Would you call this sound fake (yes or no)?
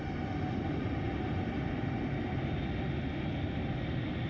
no